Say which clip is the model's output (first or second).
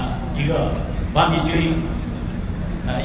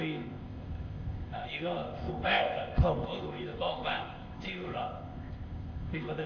second